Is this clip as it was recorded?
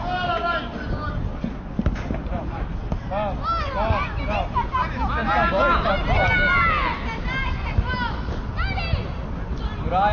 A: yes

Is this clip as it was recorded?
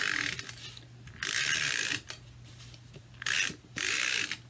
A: yes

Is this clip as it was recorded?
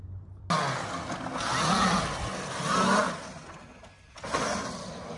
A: yes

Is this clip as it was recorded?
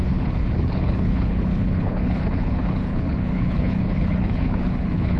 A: no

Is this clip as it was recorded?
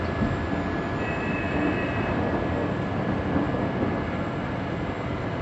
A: yes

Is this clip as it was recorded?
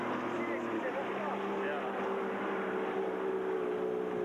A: yes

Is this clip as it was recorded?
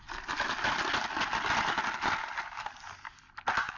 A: yes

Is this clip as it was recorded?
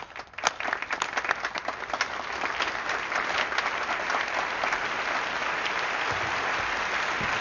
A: yes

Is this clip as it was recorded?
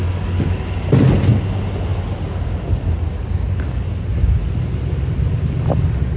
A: yes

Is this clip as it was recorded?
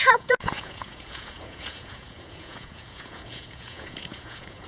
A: no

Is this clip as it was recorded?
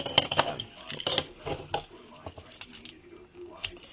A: yes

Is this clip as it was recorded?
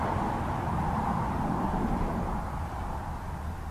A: no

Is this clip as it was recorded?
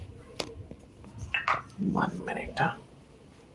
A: yes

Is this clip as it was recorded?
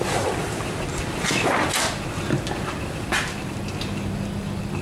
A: yes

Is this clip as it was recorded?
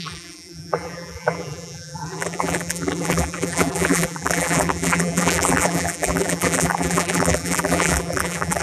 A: no